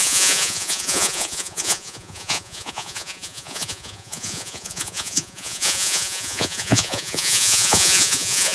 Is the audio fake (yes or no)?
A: yes